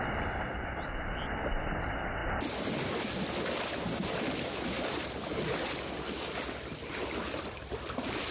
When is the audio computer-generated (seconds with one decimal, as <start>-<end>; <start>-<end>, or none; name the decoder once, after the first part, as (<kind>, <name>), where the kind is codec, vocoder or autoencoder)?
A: none